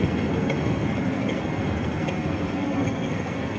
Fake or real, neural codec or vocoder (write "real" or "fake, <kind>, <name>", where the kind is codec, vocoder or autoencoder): fake, codec, SNAC